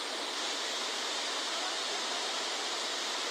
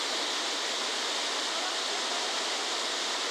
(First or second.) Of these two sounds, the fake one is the first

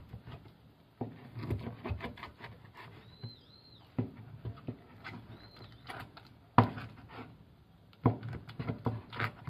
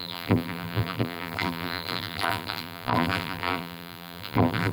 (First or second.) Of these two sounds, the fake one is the second